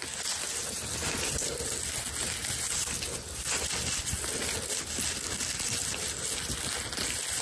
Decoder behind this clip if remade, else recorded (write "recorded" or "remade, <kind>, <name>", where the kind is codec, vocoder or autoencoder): recorded